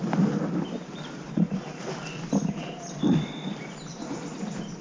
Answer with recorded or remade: remade